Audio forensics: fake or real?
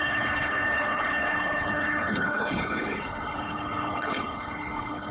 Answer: fake